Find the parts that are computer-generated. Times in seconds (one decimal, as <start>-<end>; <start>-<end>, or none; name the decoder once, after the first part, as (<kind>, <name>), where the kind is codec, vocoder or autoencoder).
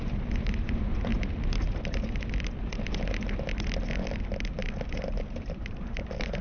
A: 0.0-1.1 (vocoder, BigVGAN v2); 4.9-6.4